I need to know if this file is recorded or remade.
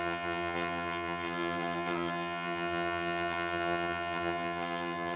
remade